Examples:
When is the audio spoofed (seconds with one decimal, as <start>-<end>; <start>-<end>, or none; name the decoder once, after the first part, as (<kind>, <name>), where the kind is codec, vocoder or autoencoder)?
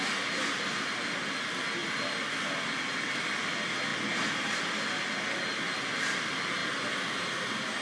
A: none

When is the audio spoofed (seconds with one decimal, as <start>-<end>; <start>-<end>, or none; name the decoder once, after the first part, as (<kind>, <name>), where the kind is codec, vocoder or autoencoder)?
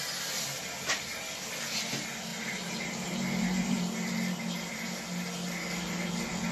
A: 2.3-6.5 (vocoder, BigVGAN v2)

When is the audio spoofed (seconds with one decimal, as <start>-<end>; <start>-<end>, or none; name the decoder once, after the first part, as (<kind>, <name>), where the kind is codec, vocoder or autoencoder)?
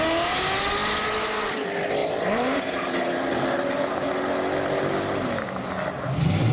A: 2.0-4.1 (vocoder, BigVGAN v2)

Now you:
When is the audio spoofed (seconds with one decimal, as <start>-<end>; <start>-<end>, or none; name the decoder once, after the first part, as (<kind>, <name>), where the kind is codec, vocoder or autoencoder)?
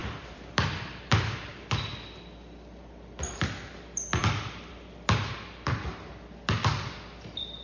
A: 0.0-1.5 (vocoder, BigVGAN v2)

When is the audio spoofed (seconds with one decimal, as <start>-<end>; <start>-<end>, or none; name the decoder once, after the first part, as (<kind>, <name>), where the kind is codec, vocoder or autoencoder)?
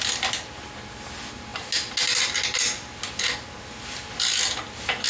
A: none